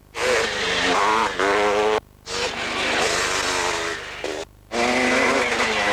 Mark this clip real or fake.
real